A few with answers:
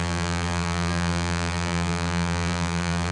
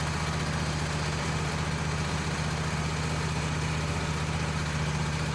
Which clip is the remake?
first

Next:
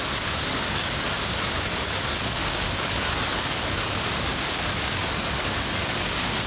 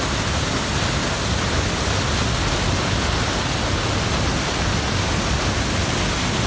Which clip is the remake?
first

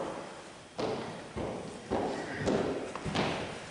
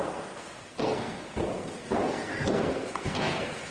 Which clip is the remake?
second